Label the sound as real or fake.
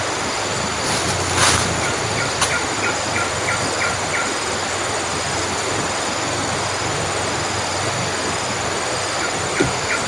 real